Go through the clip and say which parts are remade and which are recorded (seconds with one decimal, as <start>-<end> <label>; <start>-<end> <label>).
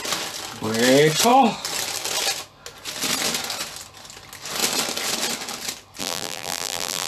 0.0-6.0 recorded; 6.0-7.1 remade